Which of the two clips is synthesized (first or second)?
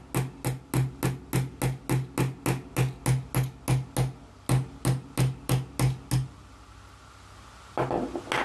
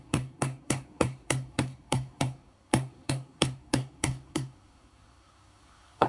second